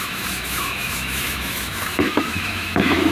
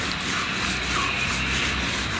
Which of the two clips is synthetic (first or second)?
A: first